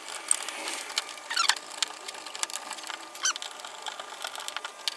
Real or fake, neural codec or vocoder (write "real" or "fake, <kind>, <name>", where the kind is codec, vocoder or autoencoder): real